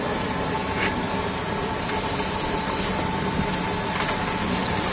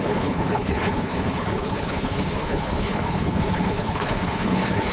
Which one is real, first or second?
first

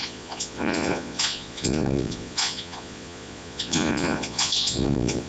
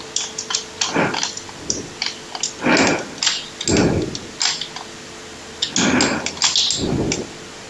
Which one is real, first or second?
second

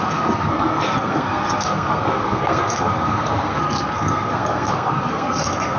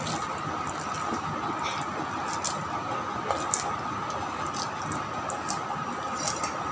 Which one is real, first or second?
second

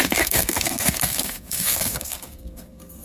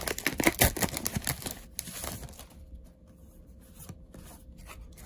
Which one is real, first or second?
second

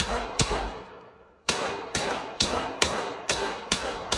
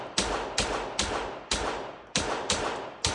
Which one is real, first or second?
second